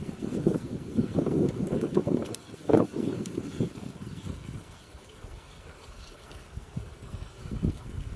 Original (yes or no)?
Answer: no